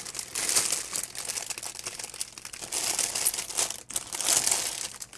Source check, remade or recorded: recorded